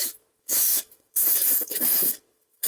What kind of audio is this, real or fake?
fake